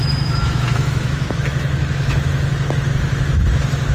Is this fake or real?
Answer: fake